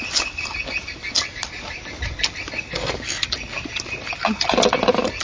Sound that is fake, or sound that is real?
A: real